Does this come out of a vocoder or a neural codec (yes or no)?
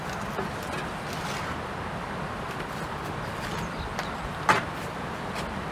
no